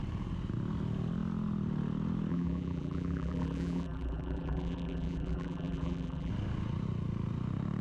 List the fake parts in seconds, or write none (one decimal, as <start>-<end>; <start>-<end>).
2.3-6.3